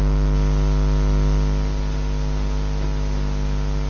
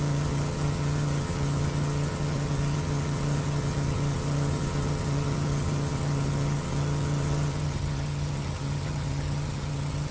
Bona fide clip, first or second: first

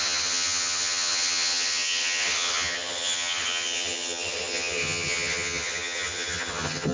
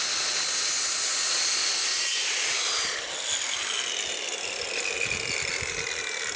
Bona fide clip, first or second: second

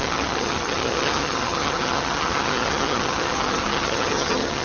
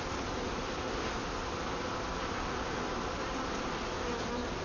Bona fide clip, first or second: second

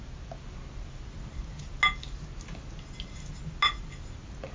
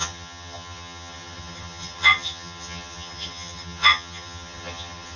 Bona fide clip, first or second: first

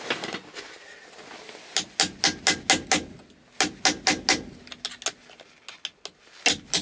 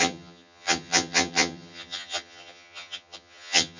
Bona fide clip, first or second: first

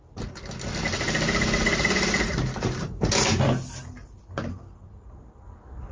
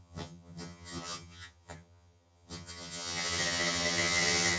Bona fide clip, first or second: first